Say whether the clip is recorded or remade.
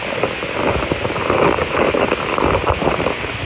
recorded